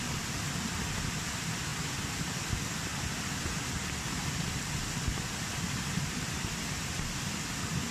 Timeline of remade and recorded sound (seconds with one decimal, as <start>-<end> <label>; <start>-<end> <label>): 0.0-7.9 recorded